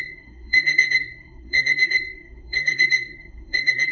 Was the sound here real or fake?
fake